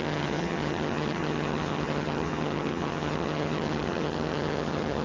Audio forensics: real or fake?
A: fake